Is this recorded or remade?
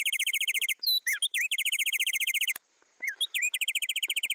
remade